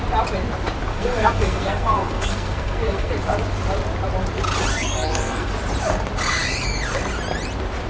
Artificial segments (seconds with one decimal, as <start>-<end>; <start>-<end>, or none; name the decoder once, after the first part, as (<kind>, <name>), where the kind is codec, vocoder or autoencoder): 0.9-3.1 (codec, SNAC); 4.7-5.5